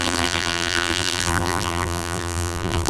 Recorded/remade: remade